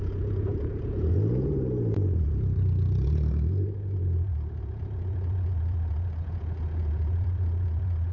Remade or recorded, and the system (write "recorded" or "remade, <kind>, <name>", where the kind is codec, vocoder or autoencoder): remade, vocoder, Vocos